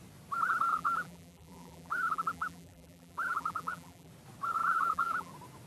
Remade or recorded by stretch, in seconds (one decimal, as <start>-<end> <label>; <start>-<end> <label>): 0.0-0.7 recorded; 0.7-4.1 remade; 4.1-4.6 recorded; 4.6-5.3 remade; 5.3-5.7 recorded